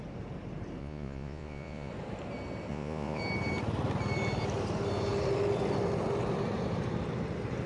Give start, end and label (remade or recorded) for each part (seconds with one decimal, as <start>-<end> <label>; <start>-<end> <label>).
0.0-0.8 recorded; 0.8-1.9 remade; 1.9-2.7 recorded; 2.7-3.2 remade; 3.2-7.7 recorded